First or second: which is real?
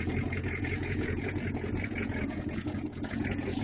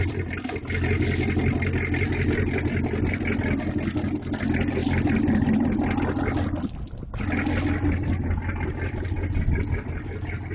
second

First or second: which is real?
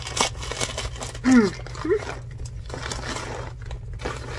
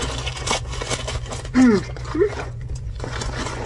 first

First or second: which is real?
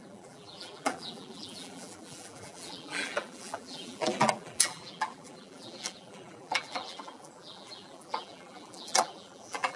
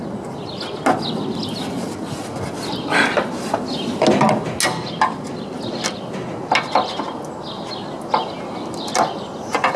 second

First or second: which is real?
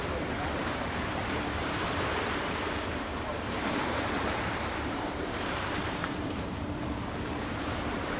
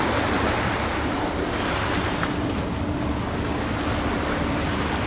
second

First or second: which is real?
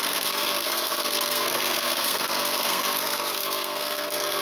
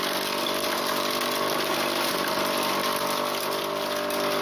second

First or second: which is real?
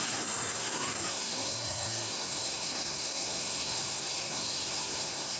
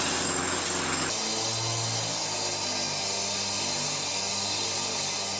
second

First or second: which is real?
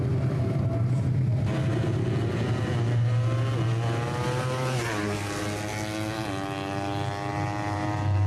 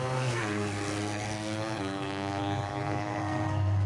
first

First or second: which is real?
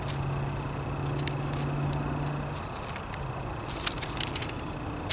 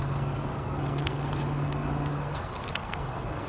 first